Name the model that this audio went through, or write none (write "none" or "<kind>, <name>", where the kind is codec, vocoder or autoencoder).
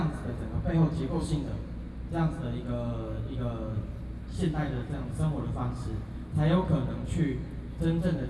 none